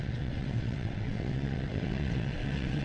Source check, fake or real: fake